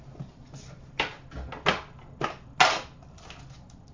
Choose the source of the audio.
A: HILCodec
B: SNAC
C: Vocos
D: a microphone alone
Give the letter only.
D